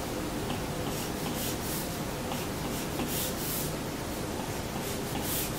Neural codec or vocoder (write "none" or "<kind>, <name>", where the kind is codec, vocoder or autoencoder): none